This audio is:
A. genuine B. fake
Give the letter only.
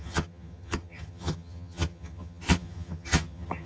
B